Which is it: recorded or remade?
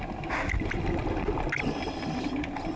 recorded